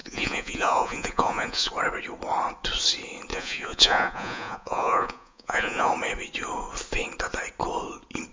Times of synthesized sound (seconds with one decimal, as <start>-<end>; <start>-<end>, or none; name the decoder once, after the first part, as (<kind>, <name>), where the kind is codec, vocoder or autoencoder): 0.0-1.7 (vocoder, Vocos); 3.3-5.9